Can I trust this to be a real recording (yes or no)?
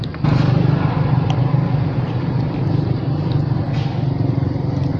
yes